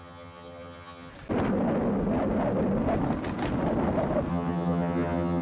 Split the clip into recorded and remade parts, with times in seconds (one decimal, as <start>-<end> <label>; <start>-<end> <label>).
0.0-1.1 remade; 1.1-4.3 recorded; 4.3-5.4 remade